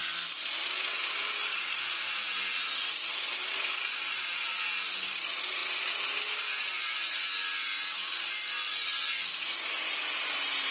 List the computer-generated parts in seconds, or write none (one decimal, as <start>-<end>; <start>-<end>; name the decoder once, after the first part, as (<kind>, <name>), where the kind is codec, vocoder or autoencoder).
none